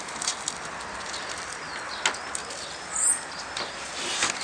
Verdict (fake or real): real